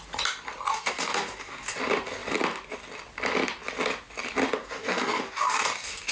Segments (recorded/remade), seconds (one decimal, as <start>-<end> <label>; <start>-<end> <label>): 0.0-0.7 recorded; 0.7-1.8 remade; 1.8-4.6 recorded; 4.6-6.1 remade